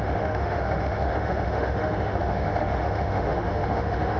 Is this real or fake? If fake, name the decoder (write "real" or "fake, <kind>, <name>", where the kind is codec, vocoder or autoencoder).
fake, autoencoder, DAC-VAE